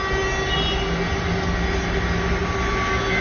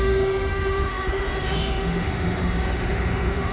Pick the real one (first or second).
first